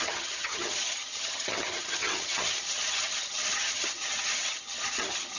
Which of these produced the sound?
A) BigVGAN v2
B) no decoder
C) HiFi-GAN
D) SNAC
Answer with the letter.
C